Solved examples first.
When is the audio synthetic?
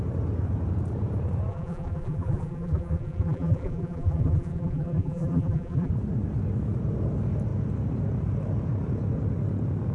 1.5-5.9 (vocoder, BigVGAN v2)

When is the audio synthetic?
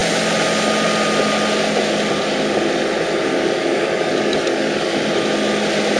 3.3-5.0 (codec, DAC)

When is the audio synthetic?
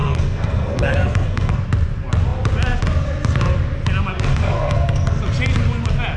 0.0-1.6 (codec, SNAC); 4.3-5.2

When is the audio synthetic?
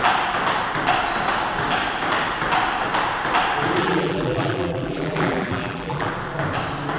3.8-6.1 (vocoder, BigVGAN v2)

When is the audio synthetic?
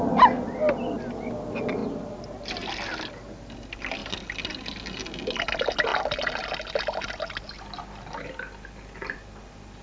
none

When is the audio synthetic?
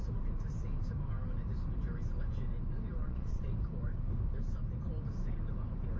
3.0-3.5 (vocoder, Vocos)